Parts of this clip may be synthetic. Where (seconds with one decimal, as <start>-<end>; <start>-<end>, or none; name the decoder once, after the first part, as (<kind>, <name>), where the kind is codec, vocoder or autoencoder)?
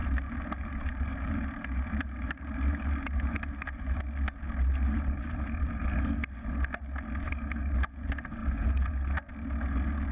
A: 0.0-4.0 (vocoder, BigVGAN v2)